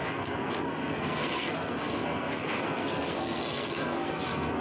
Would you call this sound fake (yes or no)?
yes